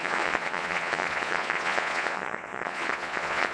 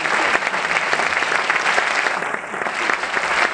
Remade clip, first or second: first